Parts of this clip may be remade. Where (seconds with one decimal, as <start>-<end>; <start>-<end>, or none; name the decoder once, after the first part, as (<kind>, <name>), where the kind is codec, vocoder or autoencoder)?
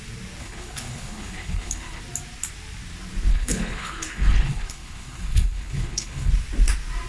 0.4-2.0 (codec, HILCodec); 3.3-6.3